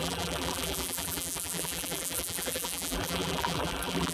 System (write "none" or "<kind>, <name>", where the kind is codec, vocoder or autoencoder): vocoder, BigVGAN v2